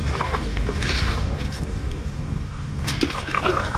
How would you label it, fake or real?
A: fake